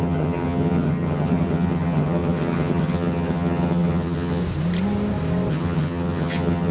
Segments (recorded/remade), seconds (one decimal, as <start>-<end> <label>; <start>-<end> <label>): 0.0-4.4 remade; 4.4-5.5 recorded; 5.5-6.7 remade